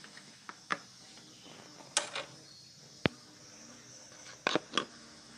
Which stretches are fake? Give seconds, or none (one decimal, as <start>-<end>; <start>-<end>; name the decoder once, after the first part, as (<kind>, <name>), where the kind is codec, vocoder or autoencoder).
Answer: 0.0-0.7 (autoencoder, DAC-VAE); 3.9-4.3; 4.9-5.4

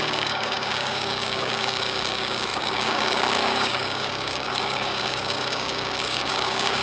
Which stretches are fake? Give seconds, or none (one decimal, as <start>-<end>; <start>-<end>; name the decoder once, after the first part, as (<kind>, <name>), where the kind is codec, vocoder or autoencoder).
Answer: 0.0-6.8 (codec, DAC)

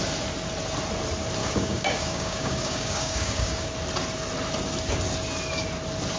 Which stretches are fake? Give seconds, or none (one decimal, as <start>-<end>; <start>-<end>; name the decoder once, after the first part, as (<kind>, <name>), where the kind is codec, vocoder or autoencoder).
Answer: 1.4-3.7 (codec, DAC)

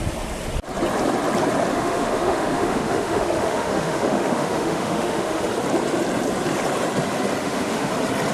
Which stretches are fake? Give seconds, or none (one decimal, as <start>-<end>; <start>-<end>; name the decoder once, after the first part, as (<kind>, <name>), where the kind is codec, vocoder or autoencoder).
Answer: 1.7-5.5 (autoencoder, DAC-VAE); 7.4-7.9